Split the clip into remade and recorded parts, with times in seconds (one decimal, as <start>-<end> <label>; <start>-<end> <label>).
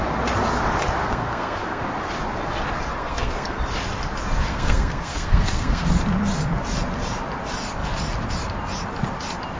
0.0-1.0 recorded; 1.0-1.8 remade; 1.8-3.0 recorded; 3.0-3.6 remade; 3.6-4.5 recorded; 4.5-5.9 remade; 5.9-9.6 recorded